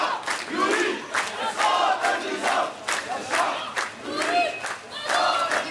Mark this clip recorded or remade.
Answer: recorded